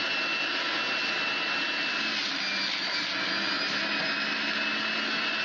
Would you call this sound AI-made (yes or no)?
no